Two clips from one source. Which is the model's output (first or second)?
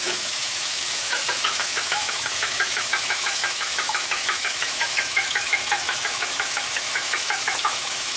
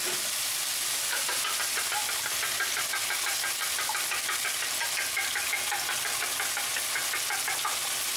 first